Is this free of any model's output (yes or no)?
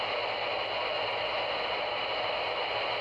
yes